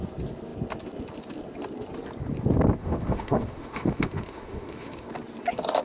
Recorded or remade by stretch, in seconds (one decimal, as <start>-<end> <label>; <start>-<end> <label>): 0.0-2.8 recorded; 2.8-5.1 remade; 5.1-5.8 recorded